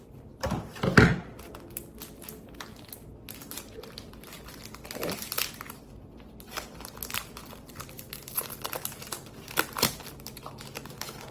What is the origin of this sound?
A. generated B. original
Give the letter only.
B